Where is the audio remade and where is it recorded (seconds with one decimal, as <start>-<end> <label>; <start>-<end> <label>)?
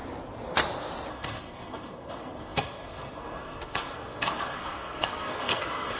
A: 0.0-1.1 recorded; 1.1-6.0 remade